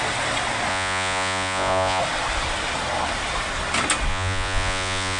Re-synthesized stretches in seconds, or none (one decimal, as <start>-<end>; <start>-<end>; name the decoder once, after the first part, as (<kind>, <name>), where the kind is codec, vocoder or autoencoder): 0.7-2.0 (vocoder, Vocos); 4.1-5.2